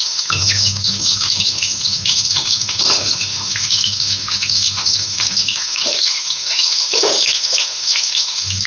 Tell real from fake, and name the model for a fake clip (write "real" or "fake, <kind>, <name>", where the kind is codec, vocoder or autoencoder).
fake, autoencoder, DAC-VAE